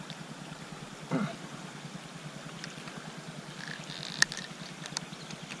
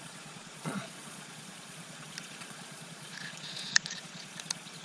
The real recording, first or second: first